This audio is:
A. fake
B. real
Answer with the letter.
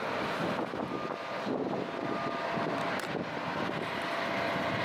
B